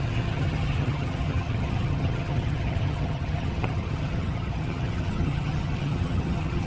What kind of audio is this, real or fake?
fake